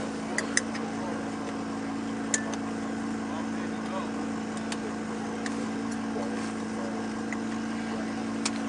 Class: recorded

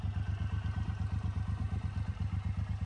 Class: recorded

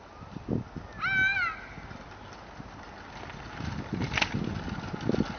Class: recorded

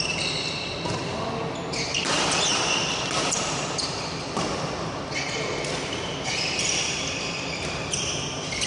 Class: recorded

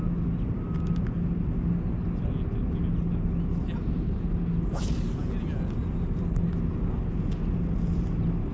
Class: recorded